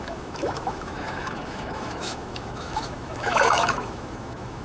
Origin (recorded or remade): remade